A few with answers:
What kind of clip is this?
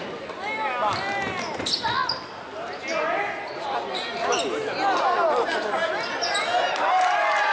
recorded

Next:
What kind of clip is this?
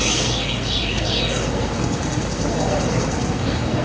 remade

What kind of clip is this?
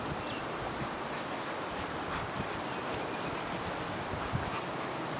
recorded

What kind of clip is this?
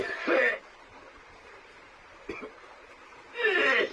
remade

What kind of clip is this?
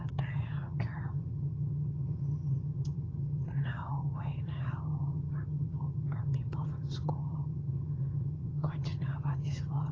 remade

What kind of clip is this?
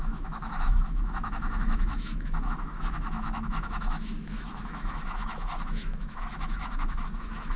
remade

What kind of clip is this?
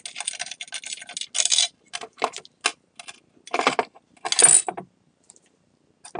recorded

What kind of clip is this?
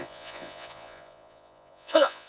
remade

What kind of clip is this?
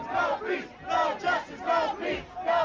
recorded